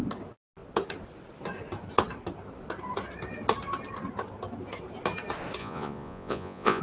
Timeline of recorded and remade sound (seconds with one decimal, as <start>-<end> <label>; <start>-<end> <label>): 0.0-5.6 recorded; 5.6-6.8 remade